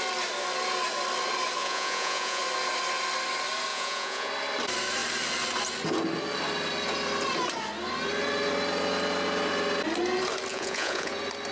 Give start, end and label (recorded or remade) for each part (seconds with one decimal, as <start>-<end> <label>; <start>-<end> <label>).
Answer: 0.0-1.6 recorded; 1.6-2.4 remade; 2.4-3.7 recorded; 3.7-4.3 remade; 4.3-10.5 recorded; 10.5-11.1 remade; 11.1-11.5 recorded